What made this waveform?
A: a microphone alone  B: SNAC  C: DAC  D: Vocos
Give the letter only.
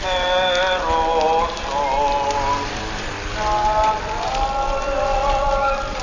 A